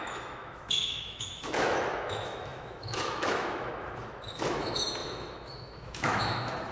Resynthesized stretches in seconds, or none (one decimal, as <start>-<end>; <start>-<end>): 0.0-6.7